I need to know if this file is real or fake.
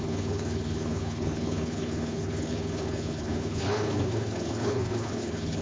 fake